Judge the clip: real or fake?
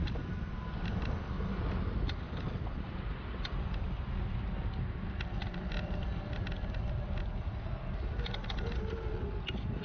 real